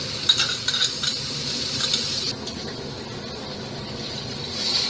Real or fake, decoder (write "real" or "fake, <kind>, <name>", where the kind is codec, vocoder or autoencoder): real